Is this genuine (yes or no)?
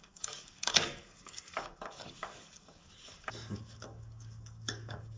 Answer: no